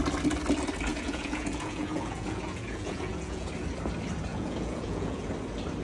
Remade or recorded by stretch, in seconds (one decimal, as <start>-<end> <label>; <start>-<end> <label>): 0.0-0.9 recorded; 0.9-3.5 remade; 3.5-4.3 recorded; 4.3-5.3 remade; 5.3-5.8 recorded